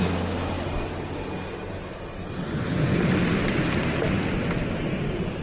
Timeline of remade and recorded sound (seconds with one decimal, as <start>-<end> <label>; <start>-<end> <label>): 0.0-5.4 recorded